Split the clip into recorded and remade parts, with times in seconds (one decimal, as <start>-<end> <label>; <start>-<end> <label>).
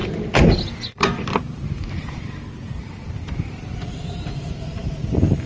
0.0-5.5 remade